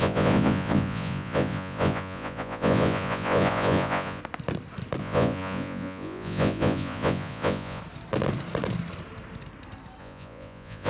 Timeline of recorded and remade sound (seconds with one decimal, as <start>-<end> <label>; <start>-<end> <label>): 0.0-4.2 remade; 4.2-5.0 recorded; 5.0-7.8 remade; 7.8-10.0 recorded; 10.0-10.9 remade